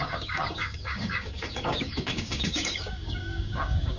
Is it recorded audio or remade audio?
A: remade